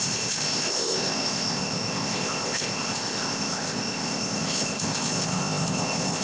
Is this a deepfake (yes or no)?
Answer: yes